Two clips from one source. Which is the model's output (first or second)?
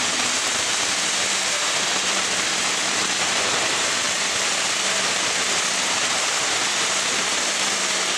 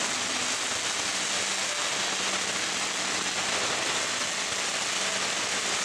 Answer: first